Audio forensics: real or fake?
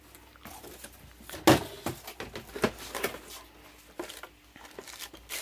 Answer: real